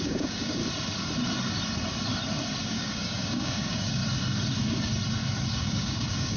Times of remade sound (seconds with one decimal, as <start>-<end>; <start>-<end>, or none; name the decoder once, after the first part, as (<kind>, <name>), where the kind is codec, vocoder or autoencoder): 0.0-0.6 (codec, DAC); 2.6-4.0; 5.5-6.4